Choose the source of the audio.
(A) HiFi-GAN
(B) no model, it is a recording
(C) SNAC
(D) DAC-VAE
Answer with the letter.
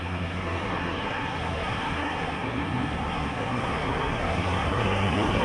C